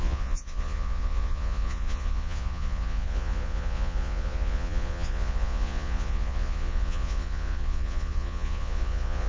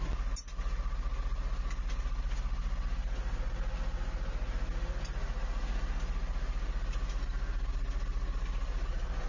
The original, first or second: second